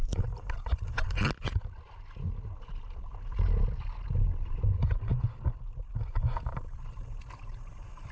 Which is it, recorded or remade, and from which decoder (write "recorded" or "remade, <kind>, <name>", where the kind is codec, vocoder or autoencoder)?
recorded